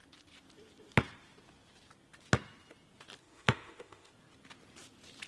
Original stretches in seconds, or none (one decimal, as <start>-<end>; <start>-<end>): 0.0-3.2; 4.1-5.3